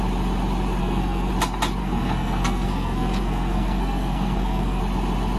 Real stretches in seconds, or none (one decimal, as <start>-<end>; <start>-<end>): 0.0-0.8; 1.3-1.8; 4.8-5.4